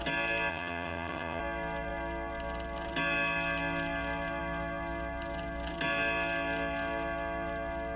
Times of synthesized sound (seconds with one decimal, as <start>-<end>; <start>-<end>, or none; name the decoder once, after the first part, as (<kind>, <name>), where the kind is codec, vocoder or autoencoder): 0.5-1.4 (vocoder, HiFi-GAN)